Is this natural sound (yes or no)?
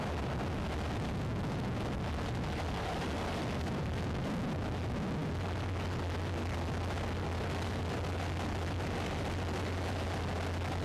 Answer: yes